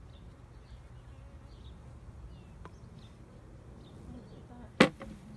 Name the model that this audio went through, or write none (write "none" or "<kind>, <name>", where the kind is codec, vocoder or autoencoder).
none